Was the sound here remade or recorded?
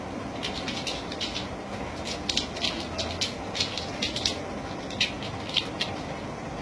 recorded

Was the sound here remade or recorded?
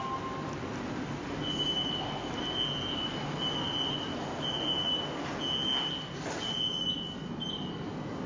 recorded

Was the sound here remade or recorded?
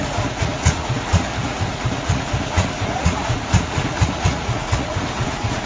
remade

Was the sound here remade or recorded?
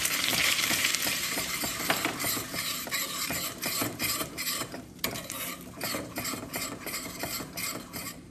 remade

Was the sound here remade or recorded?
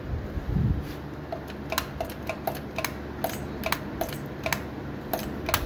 recorded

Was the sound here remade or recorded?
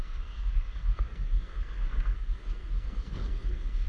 remade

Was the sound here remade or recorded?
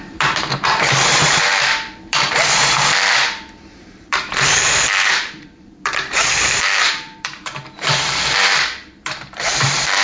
remade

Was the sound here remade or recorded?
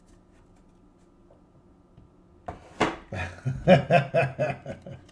recorded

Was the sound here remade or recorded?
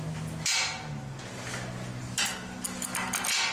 recorded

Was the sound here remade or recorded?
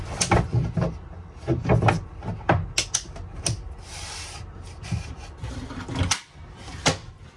recorded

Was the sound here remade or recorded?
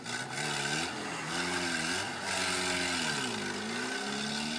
recorded